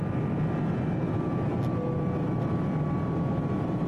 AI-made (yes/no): no